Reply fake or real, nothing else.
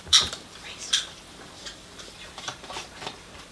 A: fake